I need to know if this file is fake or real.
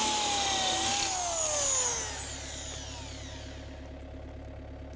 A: real